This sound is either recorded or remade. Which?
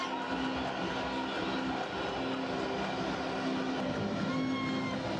recorded